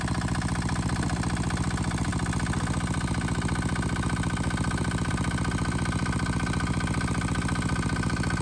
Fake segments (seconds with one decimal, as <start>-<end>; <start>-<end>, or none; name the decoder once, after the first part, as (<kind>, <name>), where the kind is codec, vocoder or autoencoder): none